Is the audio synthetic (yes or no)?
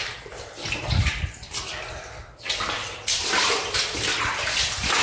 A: no